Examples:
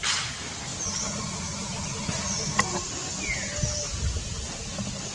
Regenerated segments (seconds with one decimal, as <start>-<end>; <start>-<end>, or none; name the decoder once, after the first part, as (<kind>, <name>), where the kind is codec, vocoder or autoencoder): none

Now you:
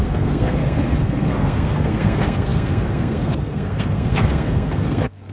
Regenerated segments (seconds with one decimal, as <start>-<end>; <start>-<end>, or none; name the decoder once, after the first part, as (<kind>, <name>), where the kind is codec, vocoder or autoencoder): 0.0-5.3 (codec, SNAC)

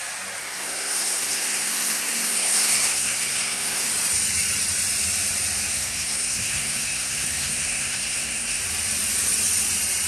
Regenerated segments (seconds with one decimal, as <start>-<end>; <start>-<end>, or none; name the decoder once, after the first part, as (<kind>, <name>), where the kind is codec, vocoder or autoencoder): 0.4-3.9 (codec, SNAC); 5.7-8.6

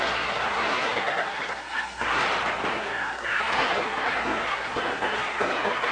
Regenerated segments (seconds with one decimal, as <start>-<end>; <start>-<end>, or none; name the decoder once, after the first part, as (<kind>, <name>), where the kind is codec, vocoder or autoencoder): 0.0-2.2 (codec, SNAC); 2.7-5.9

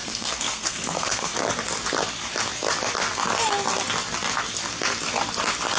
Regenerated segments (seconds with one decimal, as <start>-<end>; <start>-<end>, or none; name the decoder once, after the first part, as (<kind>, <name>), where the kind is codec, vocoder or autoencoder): 0.0-1.3 (codec, SNAC)